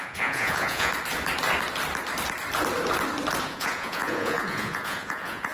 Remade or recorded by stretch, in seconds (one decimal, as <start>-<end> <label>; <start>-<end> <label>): 0.0-0.9 remade; 0.9-3.4 recorded; 3.4-5.5 remade

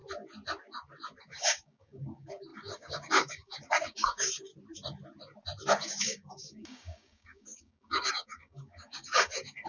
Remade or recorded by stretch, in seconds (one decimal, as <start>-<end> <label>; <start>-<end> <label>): 0.0-1.2 recorded; 1.2-4.5 remade; 4.5-6.0 recorded; 6.0-9.7 remade